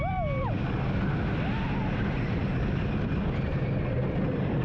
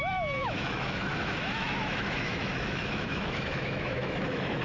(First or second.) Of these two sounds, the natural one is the first